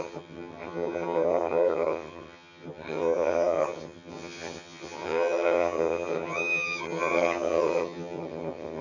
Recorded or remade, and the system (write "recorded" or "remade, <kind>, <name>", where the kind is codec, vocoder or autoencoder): remade, vocoder, HiFi-GAN